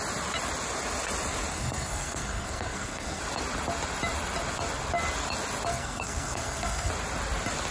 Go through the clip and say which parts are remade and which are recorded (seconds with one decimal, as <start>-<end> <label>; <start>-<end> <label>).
0.0-1.5 recorded; 1.5-3.2 remade; 3.2-5.7 recorded; 5.7-6.9 remade; 6.9-7.7 recorded